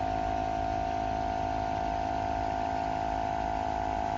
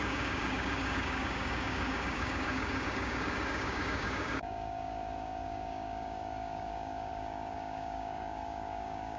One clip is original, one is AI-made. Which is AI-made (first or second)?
second